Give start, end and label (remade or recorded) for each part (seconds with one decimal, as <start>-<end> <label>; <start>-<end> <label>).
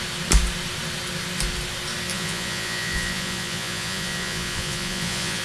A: 0.0-2.1 recorded; 2.1-5.4 remade